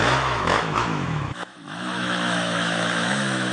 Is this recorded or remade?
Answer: remade